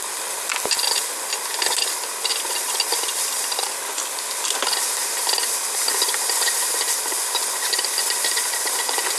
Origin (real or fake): real